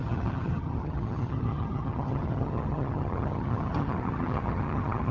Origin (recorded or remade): remade